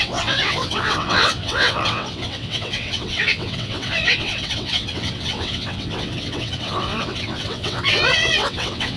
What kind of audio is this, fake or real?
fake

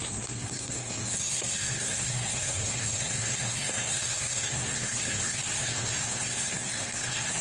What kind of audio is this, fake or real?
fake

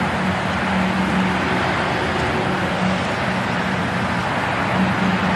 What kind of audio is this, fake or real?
real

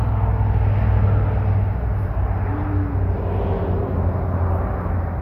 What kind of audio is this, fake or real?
real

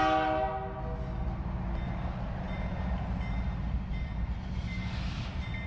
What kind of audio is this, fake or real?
real